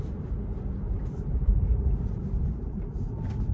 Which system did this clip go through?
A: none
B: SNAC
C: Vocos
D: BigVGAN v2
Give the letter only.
D